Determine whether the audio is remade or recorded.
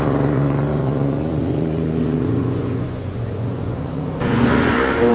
remade